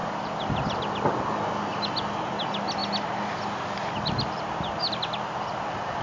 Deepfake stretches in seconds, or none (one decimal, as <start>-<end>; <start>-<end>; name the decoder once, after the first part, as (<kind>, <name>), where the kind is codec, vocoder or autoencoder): none